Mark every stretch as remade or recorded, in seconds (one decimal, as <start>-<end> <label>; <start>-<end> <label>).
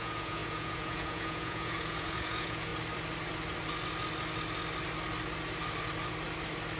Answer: 0.0-2.7 remade; 2.7-6.8 recorded